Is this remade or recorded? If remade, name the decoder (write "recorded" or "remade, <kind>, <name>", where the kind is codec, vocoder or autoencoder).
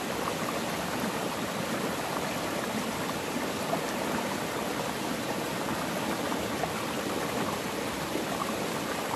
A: recorded